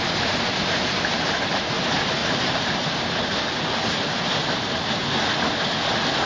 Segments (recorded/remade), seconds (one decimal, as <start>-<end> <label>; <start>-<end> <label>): 0.0-2.2 recorded; 2.2-3.4 remade; 3.4-4.4 recorded; 4.4-5.0 remade; 5.0-6.3 recorded